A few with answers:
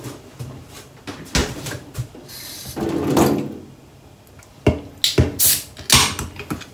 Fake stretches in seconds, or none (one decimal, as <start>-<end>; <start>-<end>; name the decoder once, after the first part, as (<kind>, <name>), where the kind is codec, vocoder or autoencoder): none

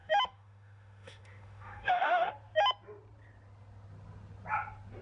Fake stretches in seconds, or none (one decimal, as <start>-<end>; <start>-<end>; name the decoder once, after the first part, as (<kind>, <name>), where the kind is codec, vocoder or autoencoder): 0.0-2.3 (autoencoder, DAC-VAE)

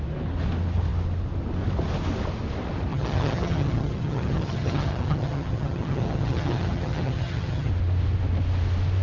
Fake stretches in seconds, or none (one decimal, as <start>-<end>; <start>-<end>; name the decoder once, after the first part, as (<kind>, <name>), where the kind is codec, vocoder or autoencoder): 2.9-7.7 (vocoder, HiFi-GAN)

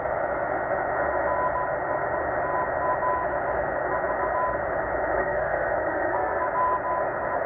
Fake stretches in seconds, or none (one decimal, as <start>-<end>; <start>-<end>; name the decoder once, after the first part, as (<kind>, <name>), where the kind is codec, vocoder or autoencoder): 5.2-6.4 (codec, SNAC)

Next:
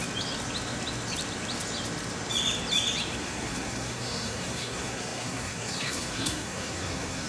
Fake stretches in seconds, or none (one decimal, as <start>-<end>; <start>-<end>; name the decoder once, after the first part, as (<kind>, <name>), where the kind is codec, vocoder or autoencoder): 3.2-7.3 (codec, SNAC)

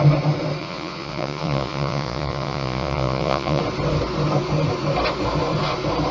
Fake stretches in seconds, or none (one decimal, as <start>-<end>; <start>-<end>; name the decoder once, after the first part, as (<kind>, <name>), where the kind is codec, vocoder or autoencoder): 0.6-3.6 (vocoder, Vocos)